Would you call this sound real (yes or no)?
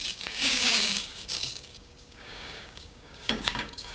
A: no